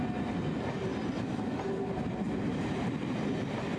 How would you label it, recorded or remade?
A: recorded